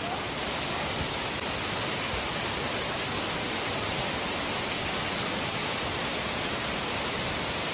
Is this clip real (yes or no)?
yes